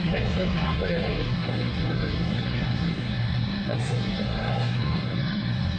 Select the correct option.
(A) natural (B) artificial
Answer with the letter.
B